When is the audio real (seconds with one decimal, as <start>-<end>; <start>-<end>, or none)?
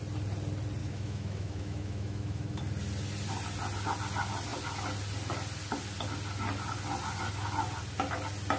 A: 0.0-0.8; 2.6-8.6